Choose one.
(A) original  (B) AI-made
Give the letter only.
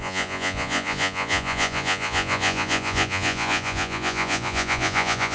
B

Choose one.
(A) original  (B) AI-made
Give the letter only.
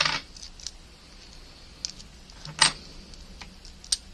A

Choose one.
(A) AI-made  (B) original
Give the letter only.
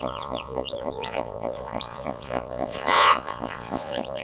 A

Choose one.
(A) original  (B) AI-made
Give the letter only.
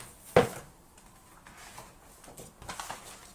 A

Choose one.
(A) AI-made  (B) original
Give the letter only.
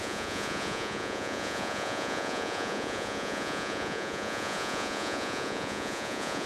A